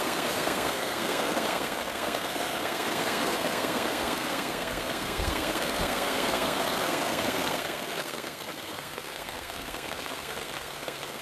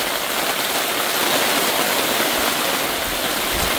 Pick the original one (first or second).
second